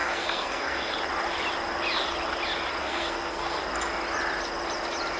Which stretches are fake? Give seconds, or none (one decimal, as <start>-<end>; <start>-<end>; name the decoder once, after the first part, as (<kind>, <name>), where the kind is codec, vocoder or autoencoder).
0.0-0.9 (codec, SNAC); 2.8-3.6